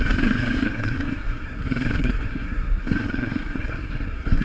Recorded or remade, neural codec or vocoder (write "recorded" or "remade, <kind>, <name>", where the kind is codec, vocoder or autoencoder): remade, codec, SNAC